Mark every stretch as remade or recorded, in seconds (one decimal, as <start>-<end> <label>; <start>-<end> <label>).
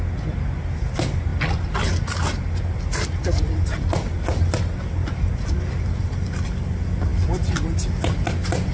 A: 0.0-8.7 recorded